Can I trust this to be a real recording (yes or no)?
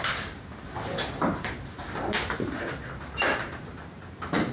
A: no